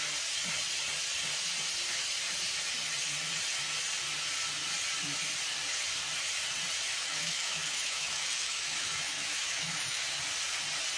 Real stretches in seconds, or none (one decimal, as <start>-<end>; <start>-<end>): 0.0-7.0; 10.0-11.0

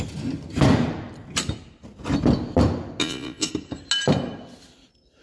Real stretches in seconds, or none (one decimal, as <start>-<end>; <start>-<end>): 0.0-3.0; 3.5-5.2

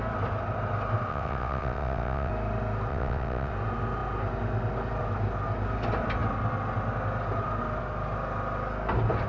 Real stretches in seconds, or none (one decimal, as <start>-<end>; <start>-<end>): 0.0-1.1; 2.3-2.9; 3.5-9.3

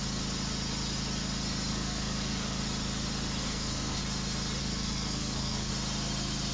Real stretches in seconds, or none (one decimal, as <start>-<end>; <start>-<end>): 0.0-1.7; 2.6-3.4; 4.0-4.6; 5.7-6.5

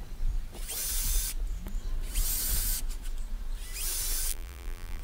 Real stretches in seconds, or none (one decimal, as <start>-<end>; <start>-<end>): 0.0-4.3

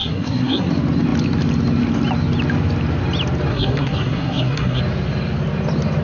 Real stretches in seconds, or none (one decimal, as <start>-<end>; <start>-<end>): 0.7-3.5; 4.8-6.0